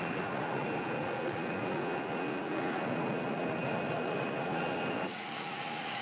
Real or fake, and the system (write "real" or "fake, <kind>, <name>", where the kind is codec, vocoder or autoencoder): fake, vocoder, Vocos